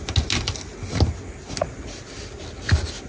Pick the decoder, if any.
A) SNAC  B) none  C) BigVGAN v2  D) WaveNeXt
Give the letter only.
B